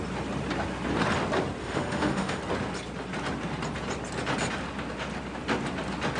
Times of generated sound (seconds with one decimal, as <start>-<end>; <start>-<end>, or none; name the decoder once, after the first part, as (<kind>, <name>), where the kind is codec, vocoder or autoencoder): 1.6-2.4 (autoencoder, DAC-VAE)